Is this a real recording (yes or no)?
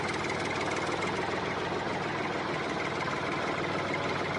yes